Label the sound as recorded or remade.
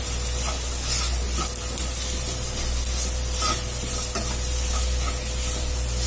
recorded